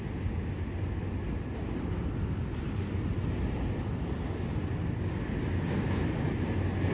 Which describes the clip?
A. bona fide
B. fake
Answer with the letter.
A